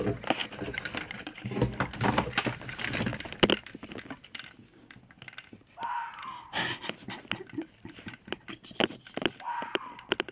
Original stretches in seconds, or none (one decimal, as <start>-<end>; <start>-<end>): 0.0-10.3